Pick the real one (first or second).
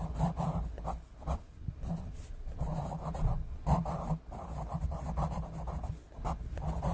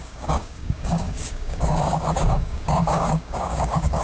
first